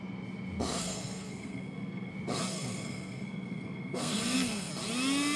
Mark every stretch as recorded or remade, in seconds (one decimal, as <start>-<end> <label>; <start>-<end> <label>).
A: 0.0-0.8 recorded; 0.8-2.1 remade; 2.1-2.5 recorded; 2.5-4.7 remade; 4.7-5.4 recorded